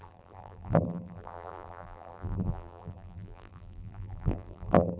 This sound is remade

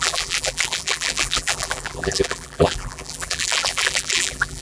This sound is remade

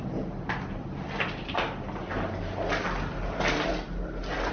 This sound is recorded